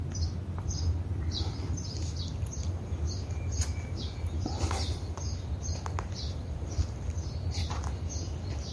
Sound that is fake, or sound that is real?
real